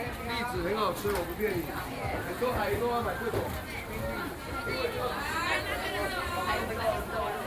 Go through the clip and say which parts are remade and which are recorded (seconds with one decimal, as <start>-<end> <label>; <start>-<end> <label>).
0.0-7.5 recorded